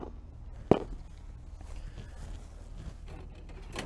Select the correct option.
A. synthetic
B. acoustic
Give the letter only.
B